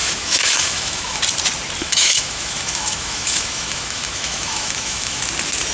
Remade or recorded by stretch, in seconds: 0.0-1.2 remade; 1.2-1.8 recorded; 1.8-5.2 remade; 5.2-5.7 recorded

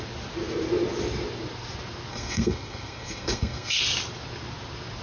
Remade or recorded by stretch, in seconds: 0.0-2.1 recorded; 2.1-3.8 remade; 3.8-5.0 recorded